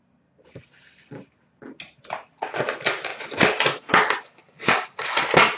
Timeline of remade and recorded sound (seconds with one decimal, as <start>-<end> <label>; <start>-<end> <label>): 0.0-5.6 recorded